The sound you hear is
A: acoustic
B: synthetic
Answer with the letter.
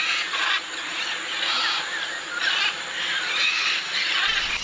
A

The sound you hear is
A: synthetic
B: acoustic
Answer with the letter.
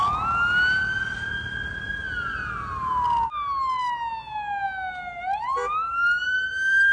B